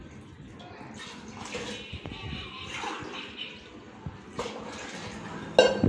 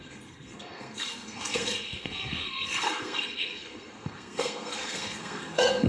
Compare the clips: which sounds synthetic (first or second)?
second